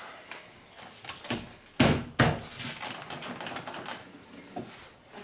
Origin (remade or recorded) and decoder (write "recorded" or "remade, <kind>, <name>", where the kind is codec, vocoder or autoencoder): recorded